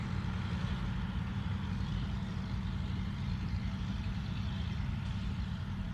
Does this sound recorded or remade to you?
remade